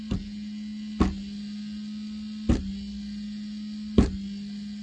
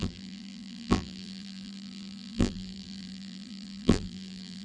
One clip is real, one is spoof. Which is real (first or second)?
first